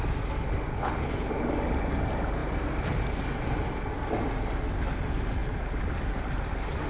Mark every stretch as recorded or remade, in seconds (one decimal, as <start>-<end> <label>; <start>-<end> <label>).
0.0-0.7 recorded; 0.7-1.3 remade; 1.3-6.9 recorded